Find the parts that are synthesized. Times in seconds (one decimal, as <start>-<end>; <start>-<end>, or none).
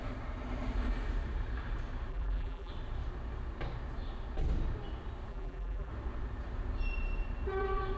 2.1-2.7; 5.3-5.9